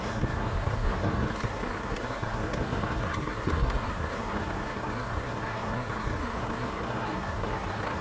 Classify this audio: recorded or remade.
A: remade